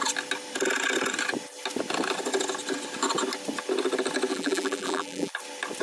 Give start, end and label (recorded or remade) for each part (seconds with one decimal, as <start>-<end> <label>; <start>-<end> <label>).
0.0-4.3 recorded; 4.3-5.3 remade; 5.3-5.8 recorded